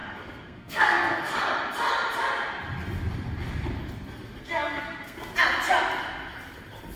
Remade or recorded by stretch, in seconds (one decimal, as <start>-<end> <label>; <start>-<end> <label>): 0.0-1.4 remade; 1.4-4.4 recorded; 4.4-5.2 remade; 5.2-7.0 recorded